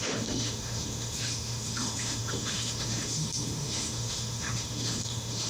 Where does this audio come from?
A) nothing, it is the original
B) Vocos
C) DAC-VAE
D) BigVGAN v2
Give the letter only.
C